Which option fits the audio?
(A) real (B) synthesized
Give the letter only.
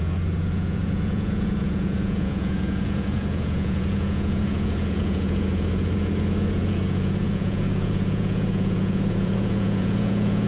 B